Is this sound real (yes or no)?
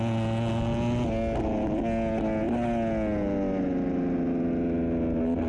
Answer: yes